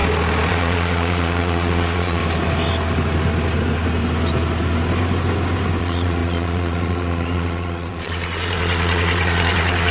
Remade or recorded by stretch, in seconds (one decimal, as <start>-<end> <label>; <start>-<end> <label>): 0.0-0.5 recorded; 0.5-2.2 remade; 2.2-5.8 recorded; 5.8-9.9 remade

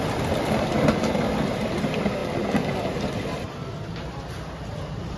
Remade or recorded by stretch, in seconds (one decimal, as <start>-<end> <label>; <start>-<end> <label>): 0.0-5.2 recorded

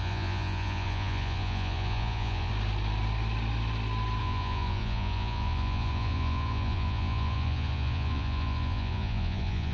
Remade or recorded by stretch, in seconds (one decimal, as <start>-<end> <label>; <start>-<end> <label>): 0.0-2.5 remade; 2.5-4.2 recorded; 4.2-9.7 remade